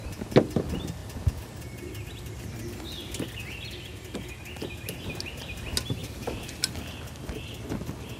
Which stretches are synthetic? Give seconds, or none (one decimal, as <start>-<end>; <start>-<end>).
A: none